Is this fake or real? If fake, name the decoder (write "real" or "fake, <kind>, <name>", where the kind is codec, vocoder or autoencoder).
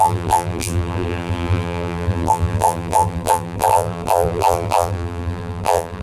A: fake, vocoder, BigVGAN v2